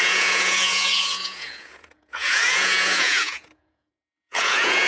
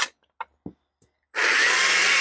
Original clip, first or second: second